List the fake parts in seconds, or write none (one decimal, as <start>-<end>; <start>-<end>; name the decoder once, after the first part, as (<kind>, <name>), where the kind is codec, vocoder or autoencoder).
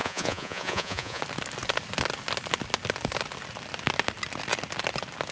0.0-1.2 (vocoder, Vocos)